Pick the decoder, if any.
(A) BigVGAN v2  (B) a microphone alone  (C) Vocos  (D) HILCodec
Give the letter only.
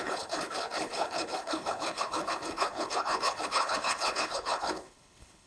D